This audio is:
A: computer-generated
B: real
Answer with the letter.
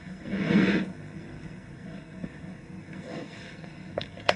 A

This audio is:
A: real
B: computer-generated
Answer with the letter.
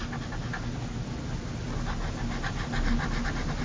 A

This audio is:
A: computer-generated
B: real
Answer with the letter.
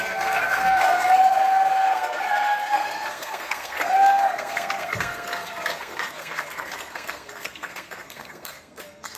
A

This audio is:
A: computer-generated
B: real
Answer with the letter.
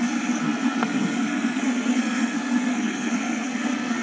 A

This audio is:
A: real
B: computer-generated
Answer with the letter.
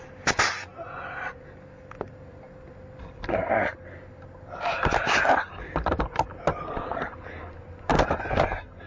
A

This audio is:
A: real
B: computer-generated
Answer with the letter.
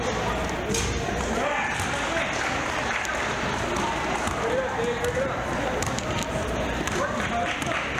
A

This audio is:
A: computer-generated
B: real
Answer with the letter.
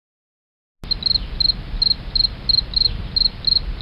B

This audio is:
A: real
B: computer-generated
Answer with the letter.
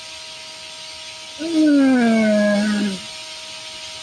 A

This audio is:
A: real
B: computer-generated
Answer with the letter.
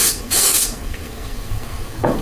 B